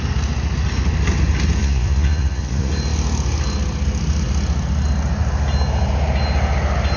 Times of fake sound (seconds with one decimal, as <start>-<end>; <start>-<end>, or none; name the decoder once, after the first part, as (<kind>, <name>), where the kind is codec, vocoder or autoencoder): 1.6-2.7 (vocoder, Vocos)

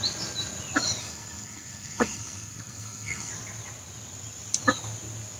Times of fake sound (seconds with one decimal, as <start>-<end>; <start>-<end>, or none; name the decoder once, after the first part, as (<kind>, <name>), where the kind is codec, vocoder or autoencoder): 1.0-3.3 (codec, SNAC)

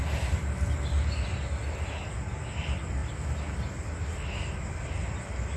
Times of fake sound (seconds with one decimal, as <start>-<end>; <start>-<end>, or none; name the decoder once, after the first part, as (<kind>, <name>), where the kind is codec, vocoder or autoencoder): none

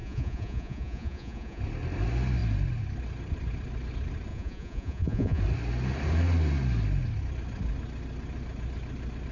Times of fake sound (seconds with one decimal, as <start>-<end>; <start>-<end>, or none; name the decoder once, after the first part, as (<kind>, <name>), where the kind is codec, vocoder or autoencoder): 0.0-1.6 (vocoder, Vocos); 4.3-5.4

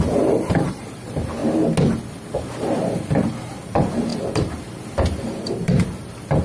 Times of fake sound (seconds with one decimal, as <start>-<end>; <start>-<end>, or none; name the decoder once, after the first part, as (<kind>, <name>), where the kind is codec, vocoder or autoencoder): 0.0-1.4 (vocoder, BigVGAN v2); 2.1-6.4

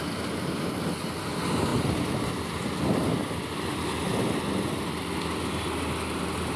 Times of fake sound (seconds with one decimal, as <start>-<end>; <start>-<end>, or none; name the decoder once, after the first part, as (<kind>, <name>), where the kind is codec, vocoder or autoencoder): 1.7-2.8 (vocoder, BigVGAN v2)

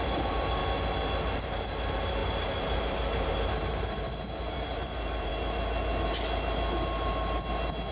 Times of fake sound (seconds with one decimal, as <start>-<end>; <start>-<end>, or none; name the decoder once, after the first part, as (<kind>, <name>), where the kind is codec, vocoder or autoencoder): 0.0-0.6 (vocoder, BigVGAN v2); 1.4-5.3

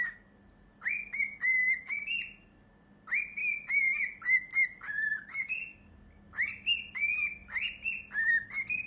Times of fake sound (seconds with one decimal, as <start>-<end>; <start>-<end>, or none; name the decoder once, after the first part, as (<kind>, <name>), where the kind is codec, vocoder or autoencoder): none